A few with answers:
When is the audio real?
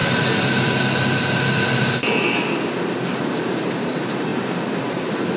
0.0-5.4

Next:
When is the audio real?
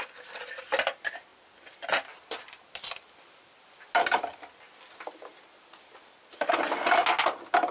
0.0-7.7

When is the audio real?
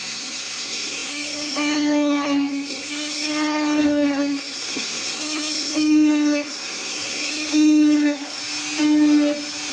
8.4-9.7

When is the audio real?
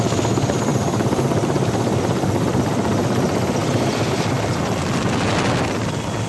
0.0-6.3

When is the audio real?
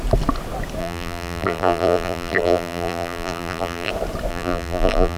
0.0-0.8; 3.9-4.3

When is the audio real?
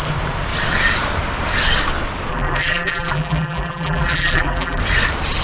0.0-2.3; 4.8-5.4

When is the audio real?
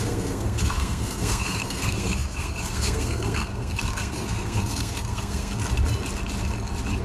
5.6-7.0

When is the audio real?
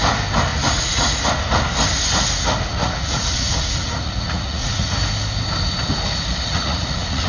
0.0-0.5; 1.2-2.7; 4.9-6.5